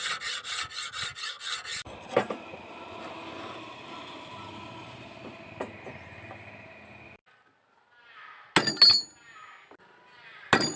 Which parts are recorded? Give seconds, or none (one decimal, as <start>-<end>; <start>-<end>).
0.0-10.8